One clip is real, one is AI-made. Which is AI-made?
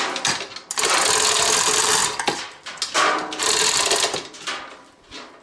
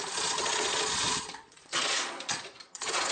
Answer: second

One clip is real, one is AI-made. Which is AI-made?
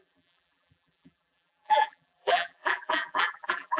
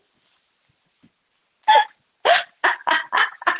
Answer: first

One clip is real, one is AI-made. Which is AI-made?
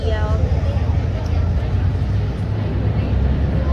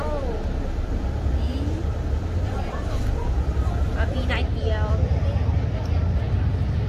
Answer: second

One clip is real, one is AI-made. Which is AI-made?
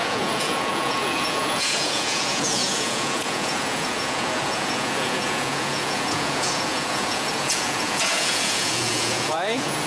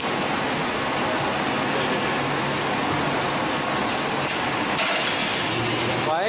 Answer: first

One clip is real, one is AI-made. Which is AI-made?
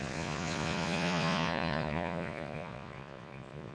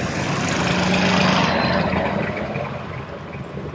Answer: first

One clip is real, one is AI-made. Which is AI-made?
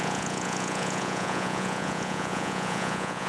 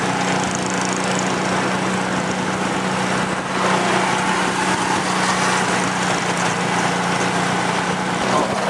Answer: first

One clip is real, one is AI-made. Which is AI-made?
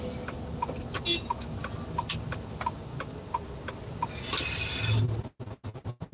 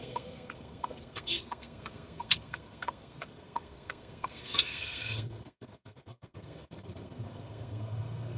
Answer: second